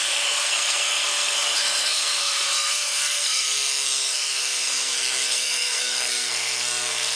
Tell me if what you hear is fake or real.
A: fake